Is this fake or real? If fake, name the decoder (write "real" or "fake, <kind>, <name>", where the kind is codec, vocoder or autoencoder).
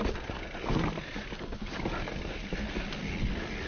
real